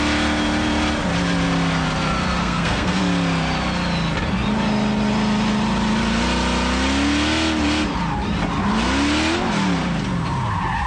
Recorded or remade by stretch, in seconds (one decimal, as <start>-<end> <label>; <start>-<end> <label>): 0.0-2.4 recorded; 2.4-3.0 remade; 3.0-10.9 recorded